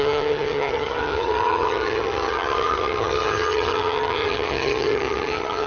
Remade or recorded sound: remade